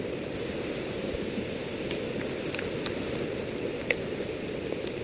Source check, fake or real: real